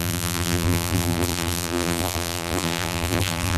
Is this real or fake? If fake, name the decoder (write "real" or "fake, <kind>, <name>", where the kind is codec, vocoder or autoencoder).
fake, vocoder, BigVGAN v2